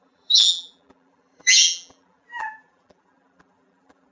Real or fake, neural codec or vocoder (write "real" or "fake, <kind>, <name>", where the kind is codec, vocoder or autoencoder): fake, vocoder, BigVGAN v2